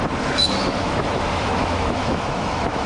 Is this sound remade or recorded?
remade